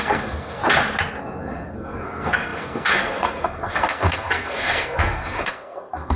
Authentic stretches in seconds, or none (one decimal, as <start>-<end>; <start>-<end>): 0.6-1.2